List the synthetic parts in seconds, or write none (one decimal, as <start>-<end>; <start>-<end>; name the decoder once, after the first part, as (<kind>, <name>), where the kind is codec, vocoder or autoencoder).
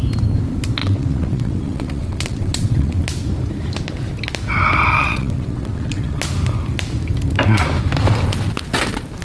0.8-3.0 (vocoder, WaveNeXt); 4.9-6.2